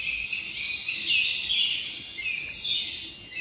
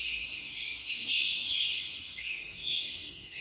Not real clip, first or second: second